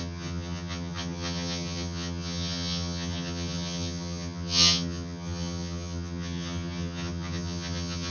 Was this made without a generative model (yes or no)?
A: no